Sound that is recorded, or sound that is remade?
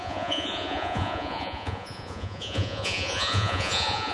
remade